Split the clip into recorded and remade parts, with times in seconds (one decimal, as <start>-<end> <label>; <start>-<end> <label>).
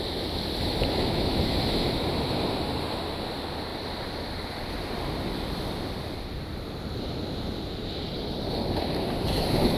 0.0-3.7 recorded; 3.7-4.7 remade; 4.7-9.8 recorded